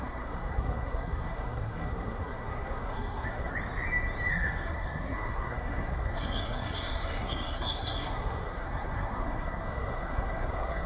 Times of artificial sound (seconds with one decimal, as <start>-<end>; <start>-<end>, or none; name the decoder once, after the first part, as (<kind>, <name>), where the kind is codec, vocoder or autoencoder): 0.0-3.5 (codec, SNAC); 4.3-10.9